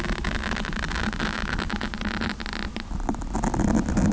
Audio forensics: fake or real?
real